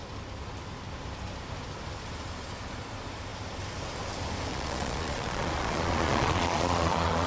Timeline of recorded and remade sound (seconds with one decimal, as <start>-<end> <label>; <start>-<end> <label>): 0.0-4.5 recorded; 4.5-7.3 remade